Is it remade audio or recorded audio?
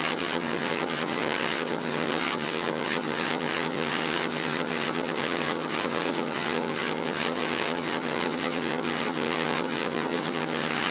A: remade